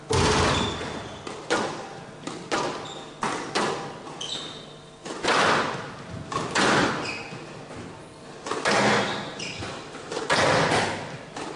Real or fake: real